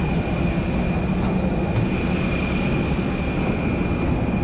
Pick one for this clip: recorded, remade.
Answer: recorded